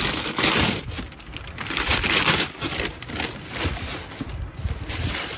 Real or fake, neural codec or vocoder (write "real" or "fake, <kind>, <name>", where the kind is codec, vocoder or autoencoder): real